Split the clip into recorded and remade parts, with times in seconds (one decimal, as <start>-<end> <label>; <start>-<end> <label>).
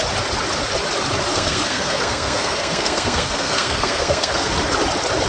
0.0-1.3 recorded; 1.3-4.5 remade; 4.5-5.3 recorded